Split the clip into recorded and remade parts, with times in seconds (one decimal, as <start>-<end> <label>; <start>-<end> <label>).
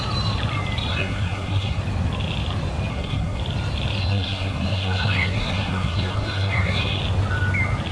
0.0-0.9 recorded; 0.9-1.8 remade; 1.8-2.9 recorded; 2.9-3.4 remade; 3.4-4.0 recorded; 4.0-7.0 remade; 7.0-7.9 recorded